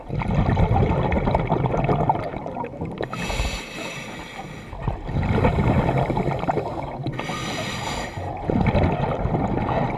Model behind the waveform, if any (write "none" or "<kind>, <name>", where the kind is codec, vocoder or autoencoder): none